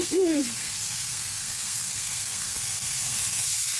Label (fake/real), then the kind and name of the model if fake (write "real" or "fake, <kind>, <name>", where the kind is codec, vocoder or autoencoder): fake, codec, SNAC